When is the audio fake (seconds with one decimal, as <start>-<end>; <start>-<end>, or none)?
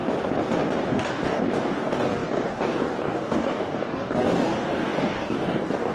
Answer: 0.9-5.9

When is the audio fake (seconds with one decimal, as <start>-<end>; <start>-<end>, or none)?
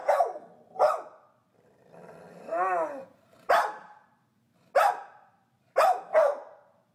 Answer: 3.0-4.6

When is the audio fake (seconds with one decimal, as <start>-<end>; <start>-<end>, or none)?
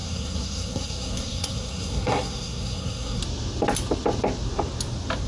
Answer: 0.0-3.2